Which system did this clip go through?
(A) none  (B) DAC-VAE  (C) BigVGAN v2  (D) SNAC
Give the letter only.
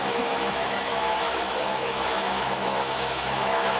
B